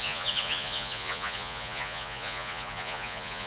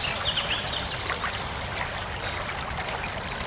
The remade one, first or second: first